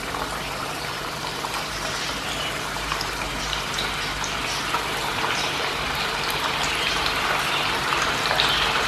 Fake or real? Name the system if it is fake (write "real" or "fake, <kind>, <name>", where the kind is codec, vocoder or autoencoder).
fake, vocoder, BigVGAN v2